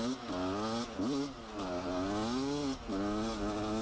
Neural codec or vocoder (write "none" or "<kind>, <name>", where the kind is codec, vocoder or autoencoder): none